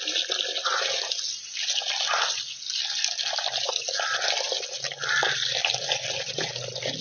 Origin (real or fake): real